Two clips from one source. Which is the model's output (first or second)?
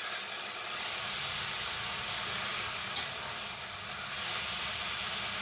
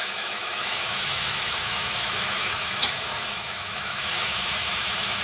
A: second